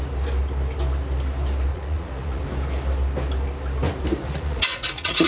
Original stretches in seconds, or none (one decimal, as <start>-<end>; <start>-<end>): 0.0-1.7; 2.4-4.2